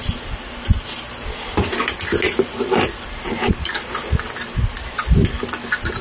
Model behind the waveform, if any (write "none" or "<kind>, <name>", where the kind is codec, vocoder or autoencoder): none